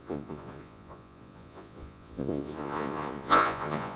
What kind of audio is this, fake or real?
fake